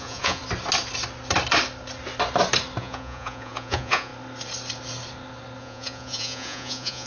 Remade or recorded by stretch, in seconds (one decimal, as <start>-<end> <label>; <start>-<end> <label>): 0.0-0.4 remade; 0.4-2.8 recorded; 2.8-4.1 remade; 4.1-5.6 recorded; 5.6-7.1 remade